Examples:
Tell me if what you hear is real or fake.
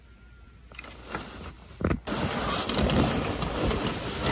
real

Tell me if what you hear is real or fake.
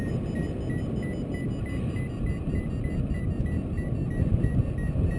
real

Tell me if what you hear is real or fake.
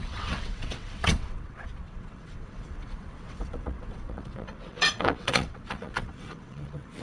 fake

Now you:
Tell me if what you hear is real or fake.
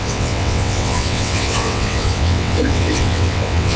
fake